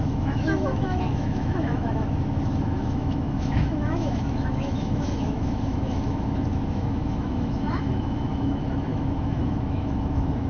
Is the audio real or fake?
fake